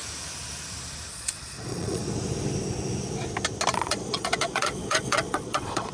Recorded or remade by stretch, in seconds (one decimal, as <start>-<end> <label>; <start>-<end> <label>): 0.0-1.1 recorded; 1.1-2.0 remade; 2.0-3.7 recorded; 3.7-5.9 remade